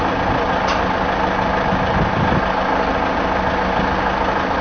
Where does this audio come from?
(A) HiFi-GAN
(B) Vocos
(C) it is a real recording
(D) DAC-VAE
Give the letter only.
C